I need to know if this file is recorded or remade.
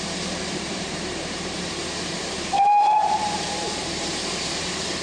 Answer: remade